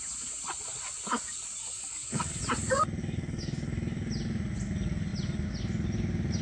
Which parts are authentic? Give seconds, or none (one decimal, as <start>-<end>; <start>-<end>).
0.0-1.6; 2.4-3.0; 4.1-6.4

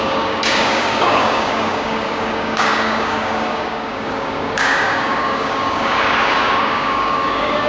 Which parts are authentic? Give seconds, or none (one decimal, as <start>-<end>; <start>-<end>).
none

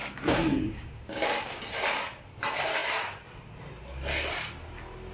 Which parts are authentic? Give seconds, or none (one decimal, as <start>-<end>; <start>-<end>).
1.6-5.1

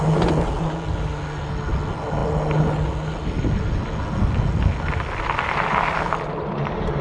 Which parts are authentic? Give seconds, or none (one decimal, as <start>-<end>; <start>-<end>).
0.0-7.0

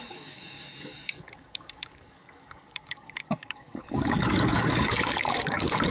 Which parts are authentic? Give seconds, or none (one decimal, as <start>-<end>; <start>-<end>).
none

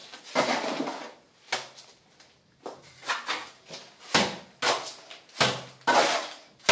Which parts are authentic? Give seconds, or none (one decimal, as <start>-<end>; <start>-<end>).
0.0-6.7

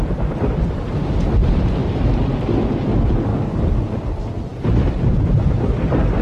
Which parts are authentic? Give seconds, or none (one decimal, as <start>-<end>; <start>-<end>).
0.0-3.3; 3.8-6.2

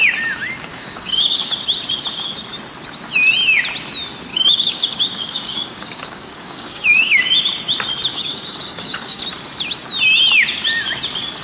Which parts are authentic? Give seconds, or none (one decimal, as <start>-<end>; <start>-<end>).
0.0-0.7; 1.5-4.3; 7.2-8.1; 9.2-11.4